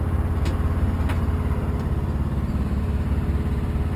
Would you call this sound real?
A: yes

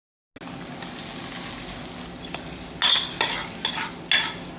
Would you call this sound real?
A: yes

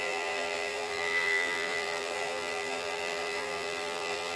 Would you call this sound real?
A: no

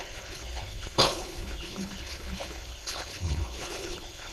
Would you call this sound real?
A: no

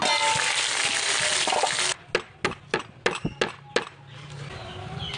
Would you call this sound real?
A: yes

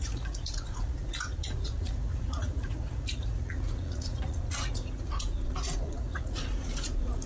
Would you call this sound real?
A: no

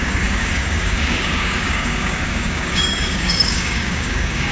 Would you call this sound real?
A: no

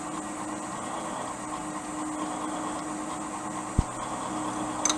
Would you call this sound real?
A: yes